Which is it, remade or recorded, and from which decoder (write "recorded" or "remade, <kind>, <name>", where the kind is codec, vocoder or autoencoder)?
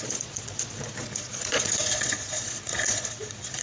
remade, vocoder, Vocos